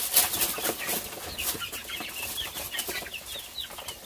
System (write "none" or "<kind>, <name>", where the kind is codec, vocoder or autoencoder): none